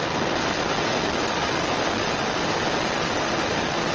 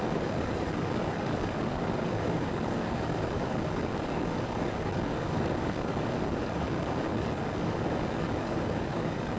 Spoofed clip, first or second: second